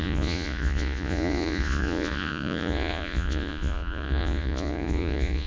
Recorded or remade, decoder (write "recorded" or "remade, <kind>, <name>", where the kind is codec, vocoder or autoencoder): remade, vocoder, Vocos